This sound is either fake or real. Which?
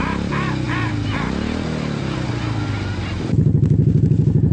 real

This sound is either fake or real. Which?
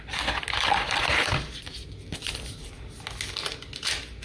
real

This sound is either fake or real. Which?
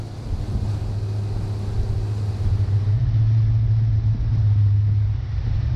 real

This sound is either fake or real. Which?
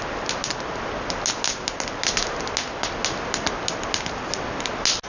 real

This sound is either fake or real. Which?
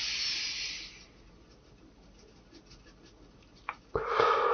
real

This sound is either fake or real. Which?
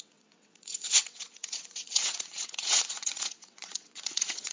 fake